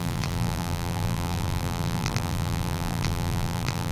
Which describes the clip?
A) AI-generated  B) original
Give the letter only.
A